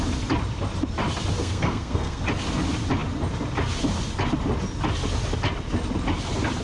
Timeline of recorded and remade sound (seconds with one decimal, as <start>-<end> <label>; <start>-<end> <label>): 0.0-1.4 recorded; 1.4-2.2 remade; 2.2-6.6 recorded